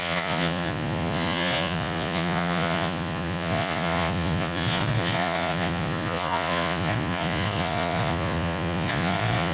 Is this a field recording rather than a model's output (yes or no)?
no